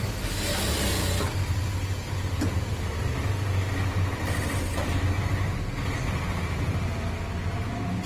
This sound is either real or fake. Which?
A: real